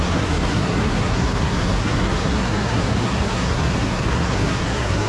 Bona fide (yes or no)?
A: no